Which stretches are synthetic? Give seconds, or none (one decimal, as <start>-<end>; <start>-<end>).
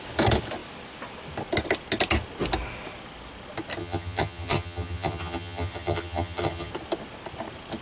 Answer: 3.8-6.7